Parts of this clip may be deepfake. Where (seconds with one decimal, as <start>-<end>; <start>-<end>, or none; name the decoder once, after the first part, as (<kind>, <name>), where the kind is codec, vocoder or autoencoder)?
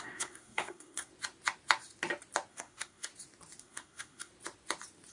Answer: 0.0-1.1 (codec, SNAC); 2.5-3.1; 3.6-4.3